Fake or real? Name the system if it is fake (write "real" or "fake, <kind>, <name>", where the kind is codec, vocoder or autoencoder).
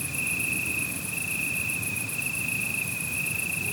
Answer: fake, vocoder, BigVGAN v2